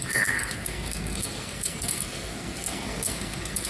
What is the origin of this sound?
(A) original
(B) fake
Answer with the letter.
B